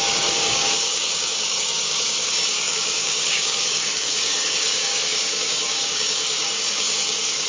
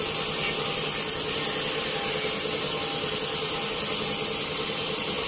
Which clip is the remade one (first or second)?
first